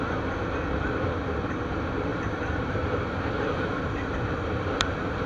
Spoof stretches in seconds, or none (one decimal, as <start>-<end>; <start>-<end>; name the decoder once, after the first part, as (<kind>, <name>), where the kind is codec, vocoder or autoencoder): 2.1-5.3 (vocoder, BigVGAN v2)